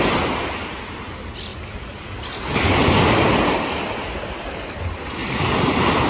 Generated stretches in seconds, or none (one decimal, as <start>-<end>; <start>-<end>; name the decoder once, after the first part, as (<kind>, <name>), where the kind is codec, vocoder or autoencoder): none